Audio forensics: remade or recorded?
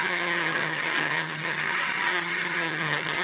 remade